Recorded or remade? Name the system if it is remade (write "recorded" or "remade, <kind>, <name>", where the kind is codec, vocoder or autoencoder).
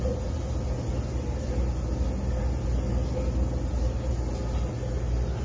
recorded